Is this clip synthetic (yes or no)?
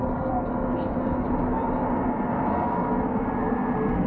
no